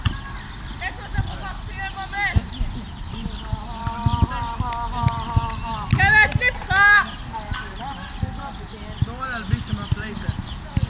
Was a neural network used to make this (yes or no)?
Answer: no